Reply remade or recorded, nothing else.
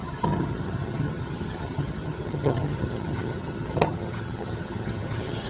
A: remade